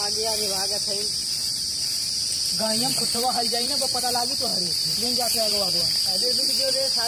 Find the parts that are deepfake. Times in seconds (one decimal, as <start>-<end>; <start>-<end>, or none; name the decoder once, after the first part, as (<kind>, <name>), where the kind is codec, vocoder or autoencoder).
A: 1.2-4.0 (vocoder, BigVGAN v2); 4.5-7.1